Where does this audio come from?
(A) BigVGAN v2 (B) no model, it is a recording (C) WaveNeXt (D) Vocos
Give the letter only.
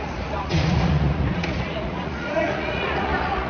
D